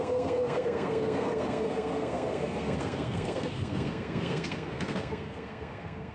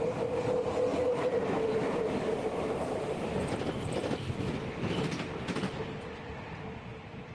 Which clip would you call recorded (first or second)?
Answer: second